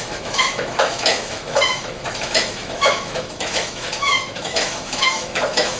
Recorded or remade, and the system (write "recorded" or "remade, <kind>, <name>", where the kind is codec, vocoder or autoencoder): remade, autoencoder, DAC-VAE